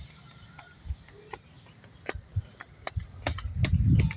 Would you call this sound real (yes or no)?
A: yes